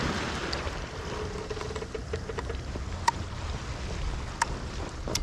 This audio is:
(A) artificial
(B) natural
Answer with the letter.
B